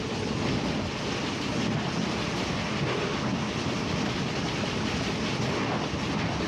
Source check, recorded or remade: recorded